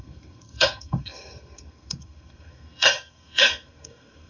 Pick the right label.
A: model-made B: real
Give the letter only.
A